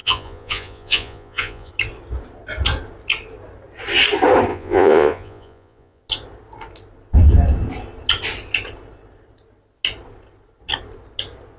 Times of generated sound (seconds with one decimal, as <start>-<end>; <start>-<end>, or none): 0.0-1.7; 4.5-6.0